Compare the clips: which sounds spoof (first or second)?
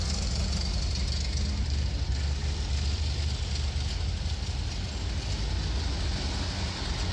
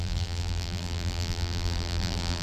second